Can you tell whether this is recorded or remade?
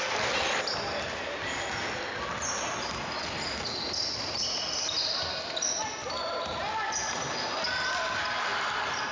recorded